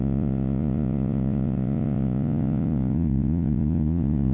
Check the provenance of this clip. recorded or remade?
remade